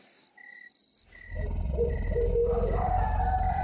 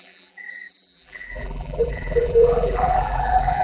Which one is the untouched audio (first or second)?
first